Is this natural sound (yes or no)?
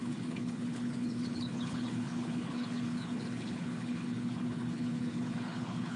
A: no